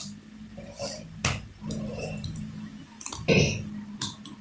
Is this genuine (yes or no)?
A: yes